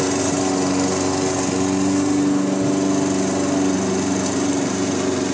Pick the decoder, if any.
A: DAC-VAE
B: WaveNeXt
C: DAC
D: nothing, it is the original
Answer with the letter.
D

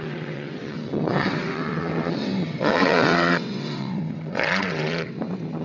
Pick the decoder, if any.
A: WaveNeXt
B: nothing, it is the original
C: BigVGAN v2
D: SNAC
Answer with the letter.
A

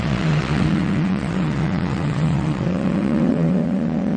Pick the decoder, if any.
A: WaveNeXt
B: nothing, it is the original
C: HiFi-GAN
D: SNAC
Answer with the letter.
A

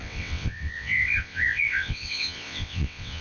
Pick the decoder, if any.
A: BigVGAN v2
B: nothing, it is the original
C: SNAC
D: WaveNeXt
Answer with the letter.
D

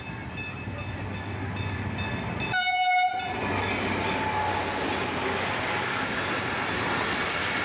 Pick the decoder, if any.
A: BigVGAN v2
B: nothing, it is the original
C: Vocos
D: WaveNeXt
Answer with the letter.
B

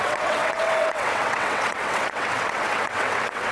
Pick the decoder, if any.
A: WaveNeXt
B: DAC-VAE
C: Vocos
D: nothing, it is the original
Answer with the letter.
A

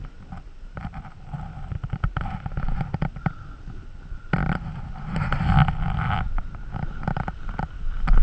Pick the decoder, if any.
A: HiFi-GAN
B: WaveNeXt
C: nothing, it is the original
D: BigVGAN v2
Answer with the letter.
C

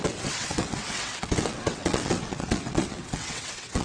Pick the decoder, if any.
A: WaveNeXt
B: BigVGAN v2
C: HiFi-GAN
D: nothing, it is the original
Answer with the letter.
A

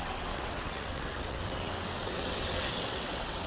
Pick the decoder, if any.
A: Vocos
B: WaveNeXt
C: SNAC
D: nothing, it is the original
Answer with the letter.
B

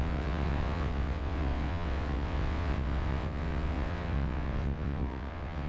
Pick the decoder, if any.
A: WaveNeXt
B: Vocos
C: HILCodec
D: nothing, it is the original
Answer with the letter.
A